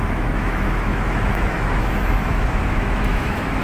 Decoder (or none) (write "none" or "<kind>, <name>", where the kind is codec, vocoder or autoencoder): autoencoder, DAC-VAE